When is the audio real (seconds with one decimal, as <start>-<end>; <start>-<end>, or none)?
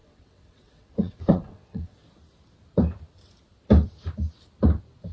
2.0-5.1